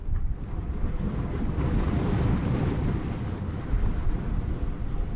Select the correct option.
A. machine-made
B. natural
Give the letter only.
A